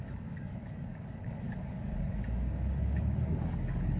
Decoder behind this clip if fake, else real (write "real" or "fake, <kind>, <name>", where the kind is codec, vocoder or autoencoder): fake, codec, DAC